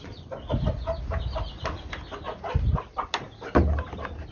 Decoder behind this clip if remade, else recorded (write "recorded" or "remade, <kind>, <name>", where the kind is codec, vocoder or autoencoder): recorded